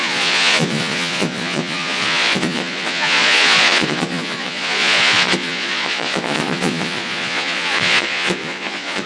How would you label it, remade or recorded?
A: remade